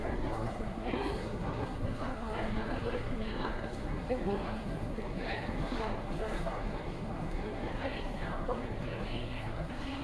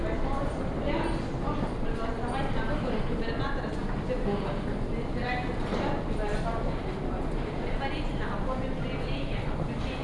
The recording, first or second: second